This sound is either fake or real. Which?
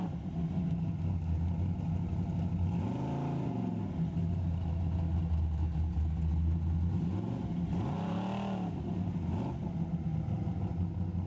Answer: real